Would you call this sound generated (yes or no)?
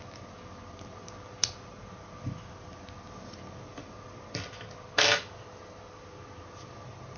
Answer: no